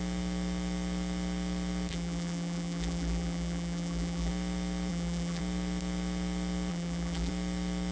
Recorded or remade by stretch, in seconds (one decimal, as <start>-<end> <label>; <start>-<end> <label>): 0.0-1.9 recorded; 1.9-4.3 remade; 4.3-4.9 recorded; 4.9-5.4 remade; 5.4-6.7 recorded; 6.7-7.3 remade; 7.3-7.9 recorded